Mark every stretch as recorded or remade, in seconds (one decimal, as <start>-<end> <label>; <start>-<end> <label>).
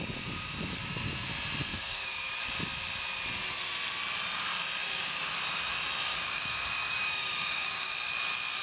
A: 0.0-1.7 recorded; 1.7-2.3 remade; 2.3-4.8 recorded; 4.8-5.4 remade; 5.4-6.1 recorded; 6.1-7.9 remade; 7.9-8.6 recorded